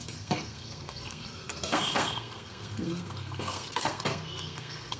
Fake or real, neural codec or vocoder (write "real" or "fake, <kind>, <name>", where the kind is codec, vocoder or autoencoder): fake, codec, SNAC